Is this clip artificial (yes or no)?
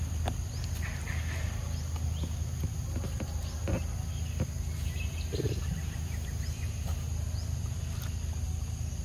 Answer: no